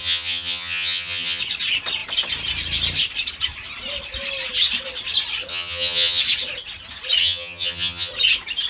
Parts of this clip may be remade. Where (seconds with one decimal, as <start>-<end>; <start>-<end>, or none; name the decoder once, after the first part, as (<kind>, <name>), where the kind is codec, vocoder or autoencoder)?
0.0-1.4 (vocoder, HiFi-GAN); 5.5-6.2; 7.2-8.1